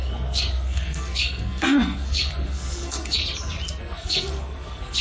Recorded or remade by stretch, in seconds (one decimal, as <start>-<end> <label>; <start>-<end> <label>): 0.0-3.2 remade; 3.2-3.8 recorded; 3.8-5.0 remade